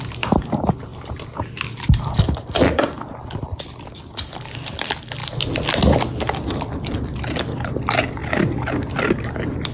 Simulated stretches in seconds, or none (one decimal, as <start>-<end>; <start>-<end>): 0.0-5.2; 6.1-9.7